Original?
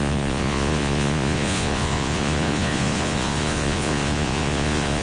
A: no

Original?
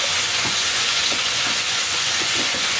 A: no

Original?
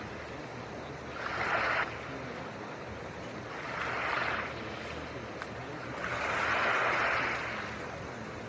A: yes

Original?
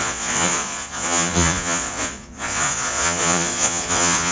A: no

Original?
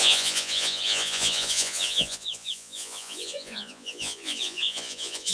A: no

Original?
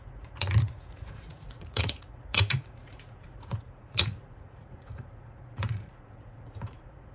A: no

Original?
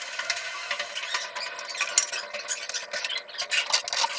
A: yes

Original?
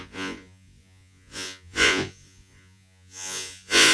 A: no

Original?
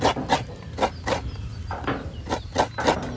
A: yes